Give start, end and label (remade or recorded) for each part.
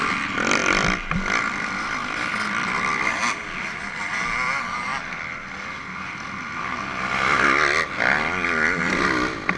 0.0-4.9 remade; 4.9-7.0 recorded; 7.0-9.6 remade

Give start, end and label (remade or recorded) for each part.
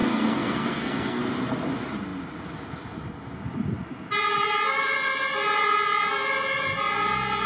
0.0-1.2 remade; 1.2-7.5 recorded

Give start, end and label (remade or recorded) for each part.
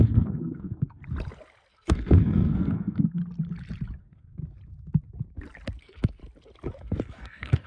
0.0-1.0 remade; 1.0-1.7 recorded; 1.7-3.2 remade; 3.2-4.0 recorded; 4.0-4.4 remade; 4.4-5.8 recorded; 5.8-6.2 remade; 6.2-6.8 recorded; 6.8-7.7 remade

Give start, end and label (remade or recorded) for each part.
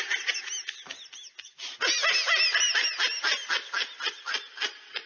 0.0-5.1 recorded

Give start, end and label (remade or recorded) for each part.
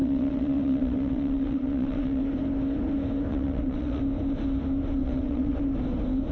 0.0-2.2 remade; 2.2-3.3 recorded; 3.3-4.0 remade; 4.0-5.0 recorded; 5.0-5.6 remade; 5.6-6.3 recorded